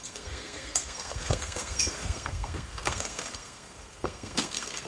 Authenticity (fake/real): fake